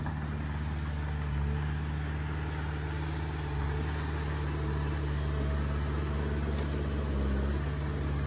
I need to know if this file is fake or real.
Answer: real